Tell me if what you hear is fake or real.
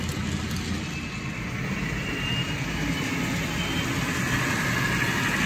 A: real